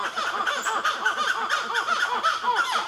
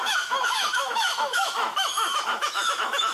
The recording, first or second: first